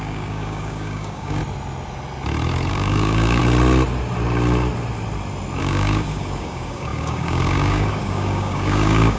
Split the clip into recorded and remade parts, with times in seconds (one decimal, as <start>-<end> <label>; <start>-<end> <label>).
0.0-1.4 remade; 1.4-2.7 recorded; 2.7-3.4 remade; 3.4-5.6 recorded; 5.6-9.2 remade